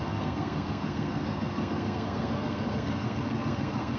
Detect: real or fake fake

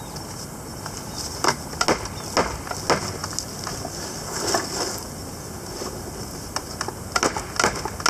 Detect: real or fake real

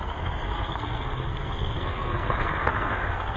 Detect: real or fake fake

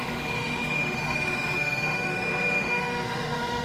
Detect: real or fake fake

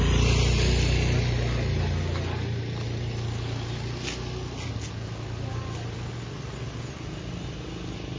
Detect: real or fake real